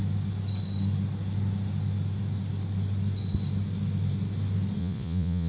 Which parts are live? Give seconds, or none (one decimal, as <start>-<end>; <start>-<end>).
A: 0.0-4.8